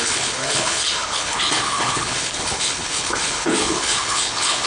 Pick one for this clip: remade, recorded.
remade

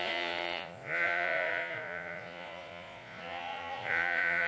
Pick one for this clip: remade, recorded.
remade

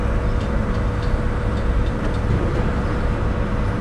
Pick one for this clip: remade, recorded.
recorded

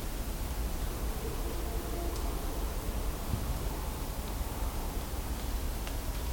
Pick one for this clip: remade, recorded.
recorded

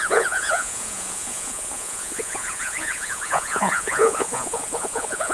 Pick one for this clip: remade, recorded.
remade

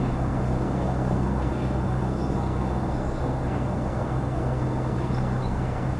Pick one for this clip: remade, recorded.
remade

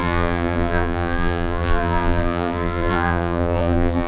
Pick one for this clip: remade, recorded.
remade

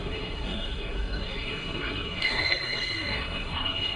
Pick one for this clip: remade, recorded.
remade